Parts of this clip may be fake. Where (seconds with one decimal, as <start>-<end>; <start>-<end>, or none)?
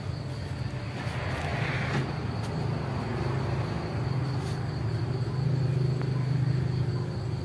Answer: none